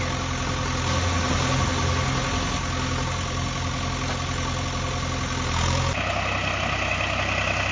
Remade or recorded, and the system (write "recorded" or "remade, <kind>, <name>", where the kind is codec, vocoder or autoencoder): recorded